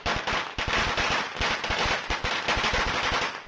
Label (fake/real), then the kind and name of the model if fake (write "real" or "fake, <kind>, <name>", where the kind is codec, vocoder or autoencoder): real